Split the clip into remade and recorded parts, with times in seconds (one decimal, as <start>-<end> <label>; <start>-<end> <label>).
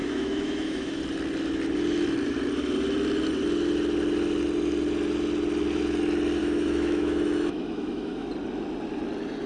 0.0-1.0 remade; 1.0-6.4 recorded; 6.4-8.3 remade; 8.3-9.5 recorded